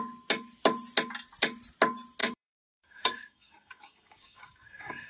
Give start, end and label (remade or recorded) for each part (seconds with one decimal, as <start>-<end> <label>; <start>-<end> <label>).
0.0-2.2 recorded; 2.2-5.1 remade